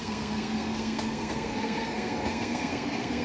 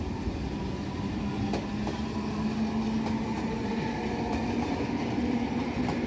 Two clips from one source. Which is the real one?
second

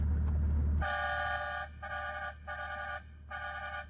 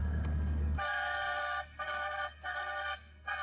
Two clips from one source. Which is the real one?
first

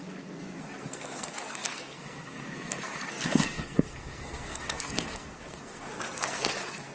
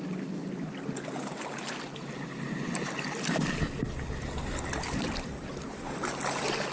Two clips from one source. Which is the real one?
second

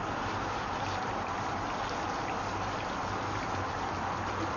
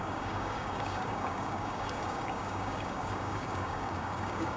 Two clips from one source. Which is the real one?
first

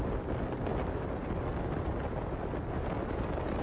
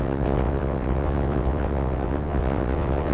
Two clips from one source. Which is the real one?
first